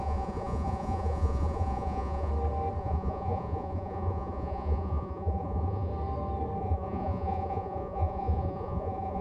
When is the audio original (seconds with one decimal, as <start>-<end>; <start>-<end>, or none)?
2.3-2.8; 5.9-6.6